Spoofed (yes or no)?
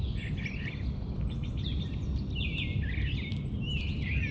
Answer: no